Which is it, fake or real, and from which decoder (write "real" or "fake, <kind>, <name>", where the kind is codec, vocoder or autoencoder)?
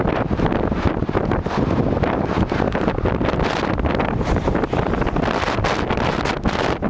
real